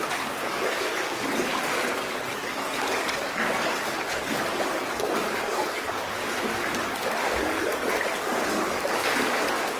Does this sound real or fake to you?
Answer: fake